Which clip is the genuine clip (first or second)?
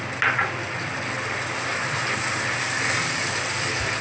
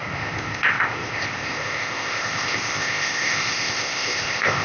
first